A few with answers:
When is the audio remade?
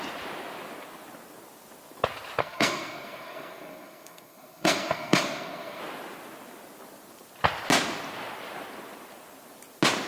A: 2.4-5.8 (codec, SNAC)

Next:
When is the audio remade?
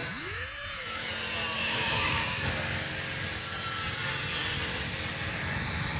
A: 0.0-1.1 (autoencoder, DAC-VAE); 1.6-2.5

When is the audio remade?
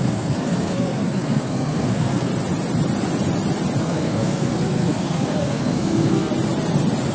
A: 0.0-2.3 (codec, SNAC); 3.8-6.3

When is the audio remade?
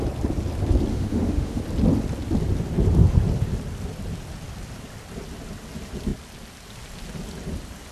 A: 0.9-1.6 (autoencoder, DAC-VAE)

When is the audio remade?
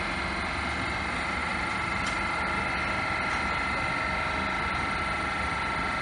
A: none